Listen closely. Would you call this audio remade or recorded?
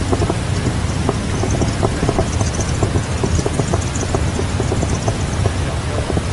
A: recorded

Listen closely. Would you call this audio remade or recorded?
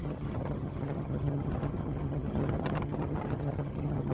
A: remade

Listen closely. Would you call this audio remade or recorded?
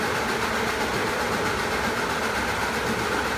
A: recorded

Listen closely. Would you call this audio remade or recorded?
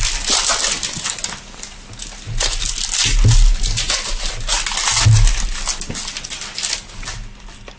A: recorded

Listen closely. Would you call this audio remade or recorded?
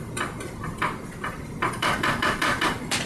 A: recorded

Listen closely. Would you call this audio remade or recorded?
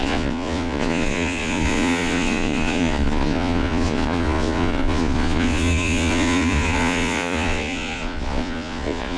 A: remade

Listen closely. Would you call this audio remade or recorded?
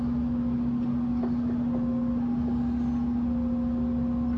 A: recorded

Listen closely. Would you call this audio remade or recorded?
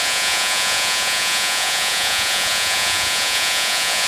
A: remade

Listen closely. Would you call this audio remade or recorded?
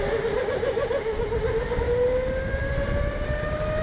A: recorded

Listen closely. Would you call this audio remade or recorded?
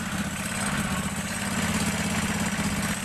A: recorded